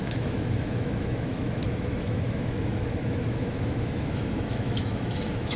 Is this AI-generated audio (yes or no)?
yes